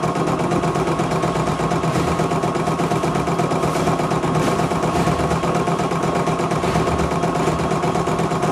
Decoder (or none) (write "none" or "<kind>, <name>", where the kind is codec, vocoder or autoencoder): vocoder, BigVGAN v2